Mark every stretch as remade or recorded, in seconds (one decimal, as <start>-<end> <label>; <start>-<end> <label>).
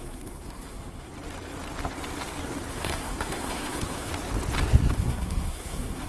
0.0-1.1 remade; 1.1-2.7 recorded; 2.7-4.1 remade; 4.1-4.9 recorded; 4.9-6.1 remade